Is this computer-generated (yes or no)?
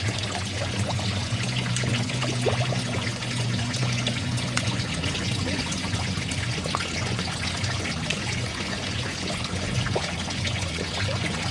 yes